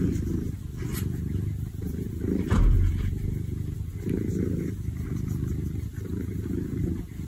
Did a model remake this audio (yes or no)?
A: no